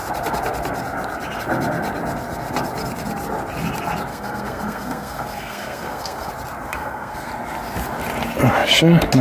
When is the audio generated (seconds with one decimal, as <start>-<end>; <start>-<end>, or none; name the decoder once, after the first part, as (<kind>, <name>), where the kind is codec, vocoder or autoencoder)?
4.1-6.3 (codec, SNAC); 6.7-7.3